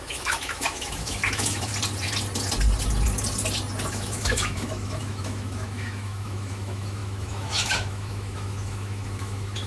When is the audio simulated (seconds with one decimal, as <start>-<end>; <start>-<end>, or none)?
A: 0.0-1.7; 3.9-9.7